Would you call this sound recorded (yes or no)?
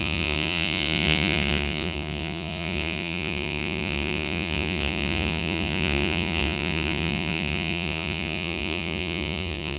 no